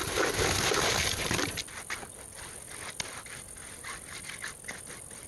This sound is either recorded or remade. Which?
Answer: recorded